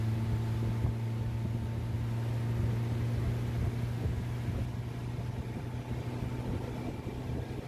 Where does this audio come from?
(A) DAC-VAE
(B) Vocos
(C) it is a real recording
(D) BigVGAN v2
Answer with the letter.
C